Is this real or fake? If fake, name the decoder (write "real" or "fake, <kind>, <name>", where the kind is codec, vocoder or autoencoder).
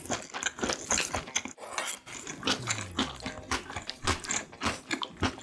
real